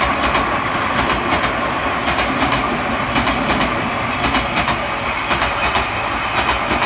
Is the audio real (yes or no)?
yes